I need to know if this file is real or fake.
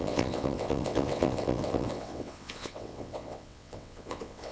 fake